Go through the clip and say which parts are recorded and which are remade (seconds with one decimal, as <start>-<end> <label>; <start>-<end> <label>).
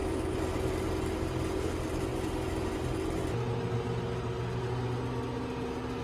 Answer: 0.0-0.5 remade; 0.5-6.0 recorded